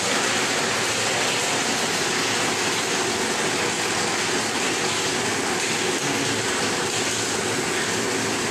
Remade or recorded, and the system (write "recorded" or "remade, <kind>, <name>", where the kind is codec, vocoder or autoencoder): recorded